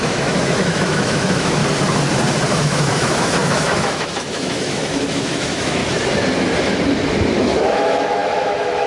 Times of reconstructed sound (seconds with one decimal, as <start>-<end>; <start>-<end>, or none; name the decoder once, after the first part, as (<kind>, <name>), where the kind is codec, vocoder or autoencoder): 0.0-1.6 (autoencoder, DAC-VAE); 2.6-5.8; 7.4-8.9